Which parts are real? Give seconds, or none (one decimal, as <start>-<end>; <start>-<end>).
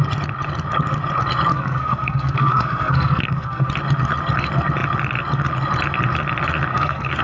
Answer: 0.0-1.5; 3.7-6.7